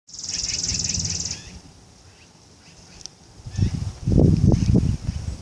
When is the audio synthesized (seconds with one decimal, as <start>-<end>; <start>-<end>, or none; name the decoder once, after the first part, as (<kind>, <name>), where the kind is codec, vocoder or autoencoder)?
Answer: none